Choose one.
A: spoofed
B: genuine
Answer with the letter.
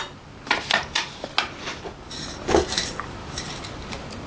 B